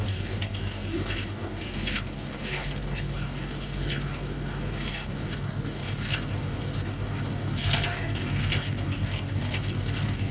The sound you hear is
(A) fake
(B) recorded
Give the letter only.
A